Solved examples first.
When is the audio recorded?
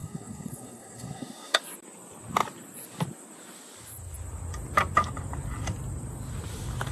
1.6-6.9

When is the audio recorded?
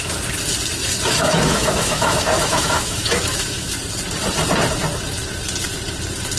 0.0-0.8; 3.7-6.4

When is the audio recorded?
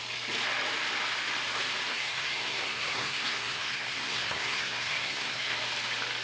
0.0-1.9; 5.6-6.2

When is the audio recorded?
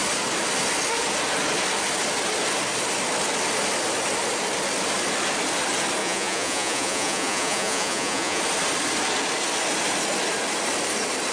0.0-6.0; 8.4-11.3